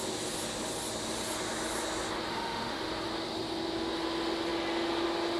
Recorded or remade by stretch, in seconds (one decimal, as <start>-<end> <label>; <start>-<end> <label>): 0.0-2.3 recorded; 2.3-2.9 remade; 2.9-5.4 recorded